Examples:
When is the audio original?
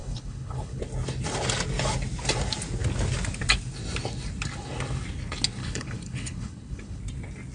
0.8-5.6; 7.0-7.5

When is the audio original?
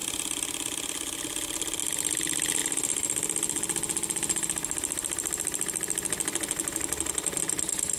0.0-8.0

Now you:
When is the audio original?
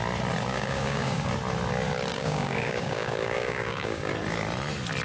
0.0-0.5; 1.3-2.1; 4.1-5.0